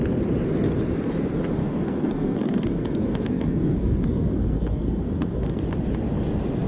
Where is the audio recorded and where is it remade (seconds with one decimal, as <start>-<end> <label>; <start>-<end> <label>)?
0.0-1.6 recorded; 1.6-5.6 remade; 5.6-6.7 recorded